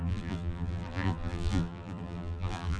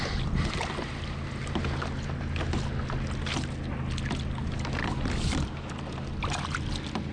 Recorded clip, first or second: second